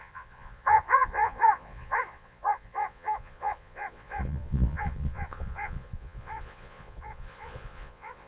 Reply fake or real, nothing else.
fake